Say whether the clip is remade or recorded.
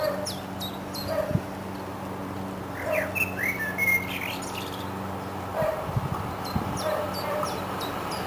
recorded